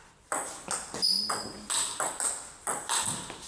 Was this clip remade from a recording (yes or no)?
no